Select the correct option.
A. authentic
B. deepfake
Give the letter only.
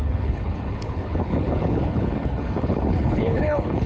B